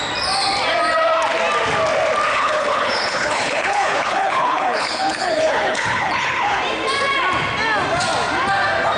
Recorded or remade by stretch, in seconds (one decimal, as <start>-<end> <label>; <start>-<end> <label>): 0.0-2.3 recorded; 2.3-6.6 remade; 6.6-9.0 recorded